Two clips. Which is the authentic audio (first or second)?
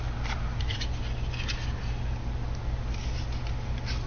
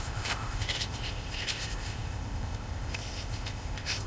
first